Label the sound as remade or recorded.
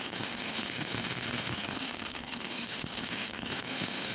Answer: remade